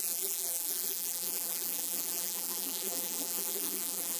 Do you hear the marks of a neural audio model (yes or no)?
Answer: yes